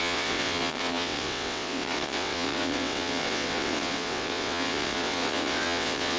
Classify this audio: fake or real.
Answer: fake